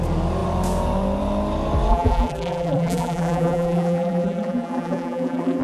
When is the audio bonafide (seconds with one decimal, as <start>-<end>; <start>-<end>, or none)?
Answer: 0.0-1.9